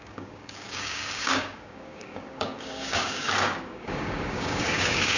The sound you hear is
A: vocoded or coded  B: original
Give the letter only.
A